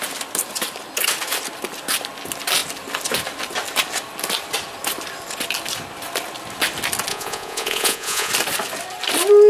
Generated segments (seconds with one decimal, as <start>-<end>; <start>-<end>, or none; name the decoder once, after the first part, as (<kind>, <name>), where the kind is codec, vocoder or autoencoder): 7.1-8.3 (vocoder, Vocos)